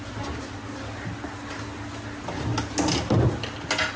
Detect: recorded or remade recorded